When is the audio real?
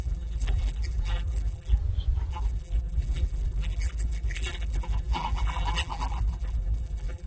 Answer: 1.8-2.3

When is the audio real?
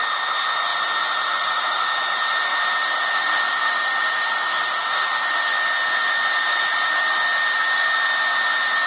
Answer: 0.0-0.7; 1.9-2.5; 3.6-8.9